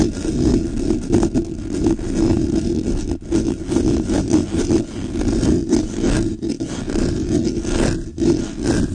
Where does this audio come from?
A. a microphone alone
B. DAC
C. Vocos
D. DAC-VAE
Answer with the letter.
A